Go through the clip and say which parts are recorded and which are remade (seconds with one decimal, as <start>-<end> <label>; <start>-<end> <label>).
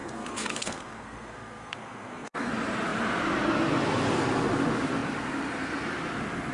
0.0-2.5 remade; 2.5-6.5 recorded